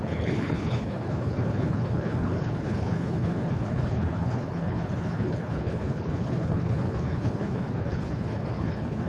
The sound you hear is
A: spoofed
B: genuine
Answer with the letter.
A